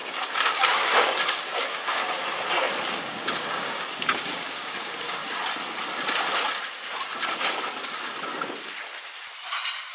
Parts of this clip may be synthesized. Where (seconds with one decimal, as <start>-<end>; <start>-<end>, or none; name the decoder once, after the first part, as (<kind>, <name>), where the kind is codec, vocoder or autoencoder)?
0.0-2.0 (codec, DAC); 3.0-5.2